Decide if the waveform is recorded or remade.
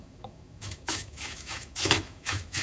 remade